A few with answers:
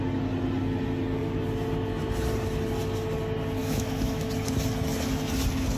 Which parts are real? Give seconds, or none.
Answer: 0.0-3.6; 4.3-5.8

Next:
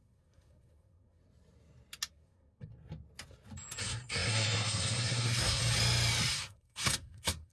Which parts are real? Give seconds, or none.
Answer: 1.2-2.1; 2.7-3.8; 5.6-6.3

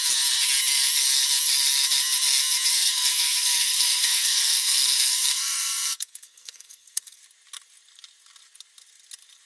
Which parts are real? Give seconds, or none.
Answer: 0.0-2.7; 7.2-9.5

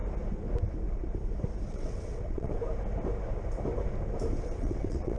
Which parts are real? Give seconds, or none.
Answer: 0.0-1.7; 2.6-4.4

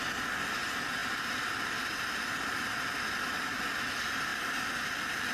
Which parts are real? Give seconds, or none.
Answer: 0.0-5.3

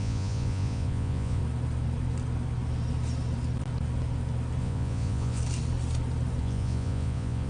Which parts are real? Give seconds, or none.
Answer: 1.4-4.6; 5.4-6.4

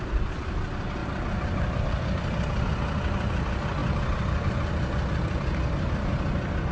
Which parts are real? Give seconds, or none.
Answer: 0.0-6.7

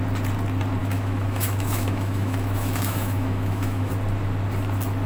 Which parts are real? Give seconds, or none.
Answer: 0.0-0.8; 3.9-5.1